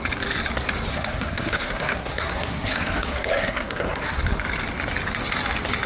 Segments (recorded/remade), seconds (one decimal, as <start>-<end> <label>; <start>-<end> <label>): 0.0-0.9 recorded; 0.9-4.2 remade; 4.2-5.9 recorded